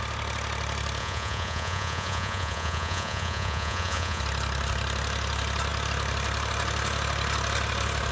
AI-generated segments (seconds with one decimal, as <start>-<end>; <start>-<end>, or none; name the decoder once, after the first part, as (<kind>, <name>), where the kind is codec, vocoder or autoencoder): 1.0-4.2 (vocoder, Vocos)